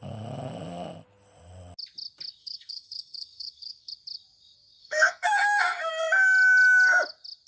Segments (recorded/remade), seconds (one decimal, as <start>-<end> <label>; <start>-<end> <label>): 0.0-2.4 recorded; 2.4-3.9 remade; 3.9-4.8 recorded; 4.8-5.9 remade; 5.9-7.5 recorded